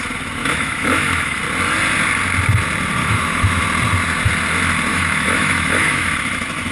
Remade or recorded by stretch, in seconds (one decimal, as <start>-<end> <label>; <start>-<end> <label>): 0.0-0.4 recorded; 0.4-1.4 remade; 1.4-3.0 recorded; 3.0-3.6 remade; 3.6-4.9 recorded; 4.9-6.1 remade; 6.1-6.7 recorded